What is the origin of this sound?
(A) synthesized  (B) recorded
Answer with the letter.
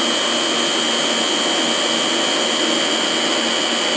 B